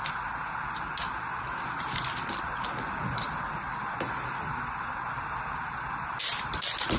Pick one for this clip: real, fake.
real